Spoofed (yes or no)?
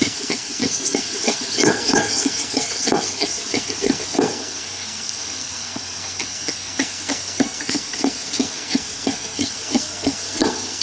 yes